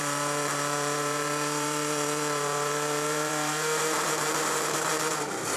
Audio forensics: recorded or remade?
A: remade